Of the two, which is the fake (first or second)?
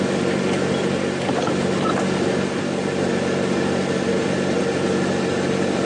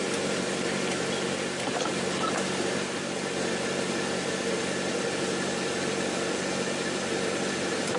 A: second